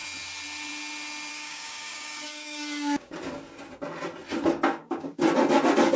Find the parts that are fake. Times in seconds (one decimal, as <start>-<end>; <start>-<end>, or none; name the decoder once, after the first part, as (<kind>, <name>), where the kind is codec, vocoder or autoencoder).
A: 1.3-3.2 (codec, DAC); 4.8-5.3